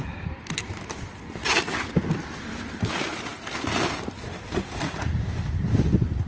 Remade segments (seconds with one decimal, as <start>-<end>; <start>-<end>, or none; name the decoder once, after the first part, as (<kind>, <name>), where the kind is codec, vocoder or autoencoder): none